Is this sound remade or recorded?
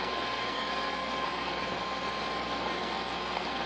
remade